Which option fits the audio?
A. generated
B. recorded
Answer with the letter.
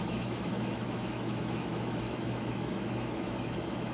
A